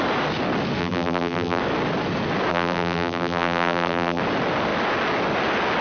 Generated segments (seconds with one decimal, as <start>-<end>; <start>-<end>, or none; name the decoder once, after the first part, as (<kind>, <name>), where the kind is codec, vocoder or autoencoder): 0.8-1.6 (vocoder, BigVGAN v2); 2.5-4.2